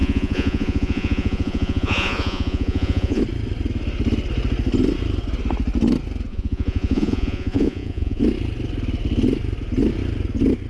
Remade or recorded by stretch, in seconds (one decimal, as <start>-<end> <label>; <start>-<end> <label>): 0.0-3.2 remade; 3.2-6.3 recorded; 6.3-8.2 remade; 8.2-10.7 recorded

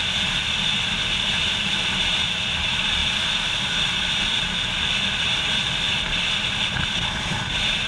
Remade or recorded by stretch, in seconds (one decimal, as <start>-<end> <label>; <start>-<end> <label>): 0.0-7.9 recorded

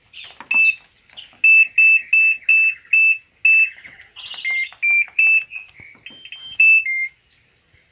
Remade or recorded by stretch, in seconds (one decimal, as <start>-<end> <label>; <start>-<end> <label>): 0.0-6.4 recorded; 6.4-7.1 remade; 7.1-7.9 recorded

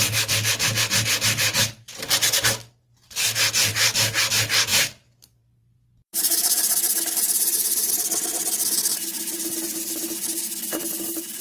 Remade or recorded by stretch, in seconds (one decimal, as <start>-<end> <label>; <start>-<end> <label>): 0.0-4.7 recorded; 4.7-7.9 remade; 7.9-8.9 recorded; 8.9-9.9 remade; 9.9-11.4 recorded

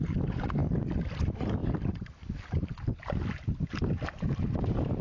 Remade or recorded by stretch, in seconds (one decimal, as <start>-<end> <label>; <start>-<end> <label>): 0.0-5.0 recorded

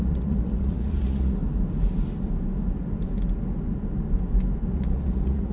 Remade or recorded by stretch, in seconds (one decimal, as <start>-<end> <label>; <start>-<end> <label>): 0.0-1.4 remade; 1.4-4.7 recorded; 4.7-5.5 remade